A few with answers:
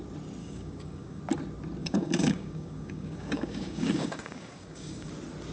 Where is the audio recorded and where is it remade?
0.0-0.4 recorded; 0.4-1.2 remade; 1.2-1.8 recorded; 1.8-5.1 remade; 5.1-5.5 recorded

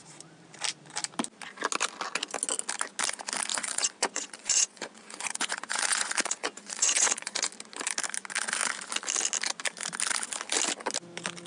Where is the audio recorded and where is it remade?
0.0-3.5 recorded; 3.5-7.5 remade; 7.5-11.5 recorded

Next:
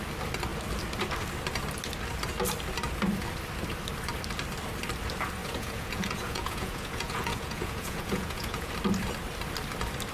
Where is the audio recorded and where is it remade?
0.0-5.4 recorded; 5.4-8.7 remade; 8.7-10.1 recorded